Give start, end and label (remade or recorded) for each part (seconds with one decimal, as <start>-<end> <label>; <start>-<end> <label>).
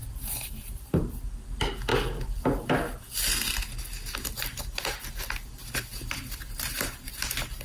0.0-1.3 remade; 1.3-5.9 recorded; 5.9-7.1 remade; 7.1-7.6 recorded